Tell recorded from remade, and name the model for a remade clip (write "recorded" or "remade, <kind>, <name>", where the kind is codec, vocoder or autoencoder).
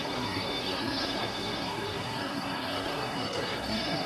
remade, codec, SNAC